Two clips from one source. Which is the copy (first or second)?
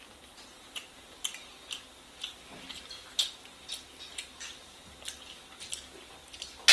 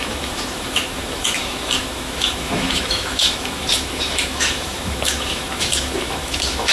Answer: second